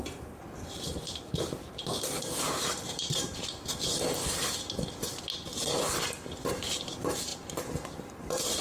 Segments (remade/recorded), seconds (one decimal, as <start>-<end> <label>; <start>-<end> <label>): 0.0-0.4 remade; 0.4-1.2 recorded; 1.2-3.7 remade; 3.7-6.0 recorded; 6.0-7.3 remade; 7.3-8.0 recorded; 8.0-8.6 remade